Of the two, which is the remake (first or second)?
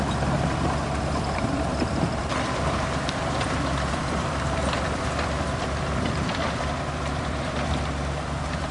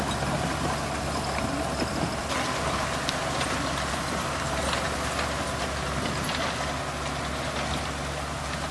first